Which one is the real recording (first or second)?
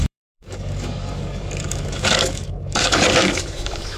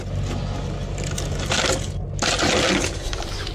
second